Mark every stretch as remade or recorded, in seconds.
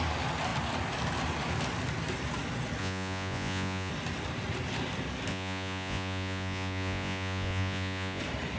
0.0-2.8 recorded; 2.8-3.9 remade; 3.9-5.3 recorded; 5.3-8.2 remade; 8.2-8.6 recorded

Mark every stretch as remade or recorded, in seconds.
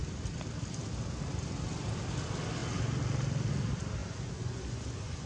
0.0-4.0 recorded; 4.0-5.3 remade